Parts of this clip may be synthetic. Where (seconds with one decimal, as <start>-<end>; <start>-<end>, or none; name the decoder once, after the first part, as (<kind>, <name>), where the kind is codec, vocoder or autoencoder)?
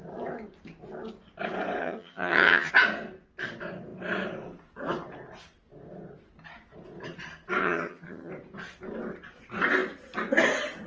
1.8-2.7 (vocoder, HiFi-GAN); 7.6-8.3